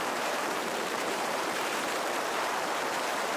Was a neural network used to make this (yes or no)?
yes